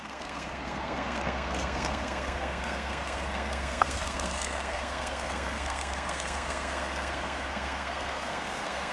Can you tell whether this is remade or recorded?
remade